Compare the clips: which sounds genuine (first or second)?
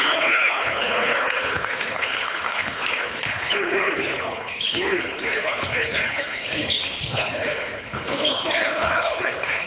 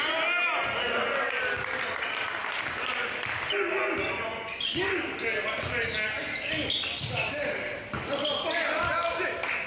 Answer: second